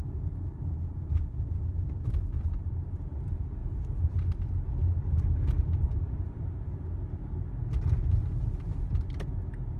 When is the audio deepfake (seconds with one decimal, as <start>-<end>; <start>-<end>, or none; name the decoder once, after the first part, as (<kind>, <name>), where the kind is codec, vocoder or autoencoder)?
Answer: none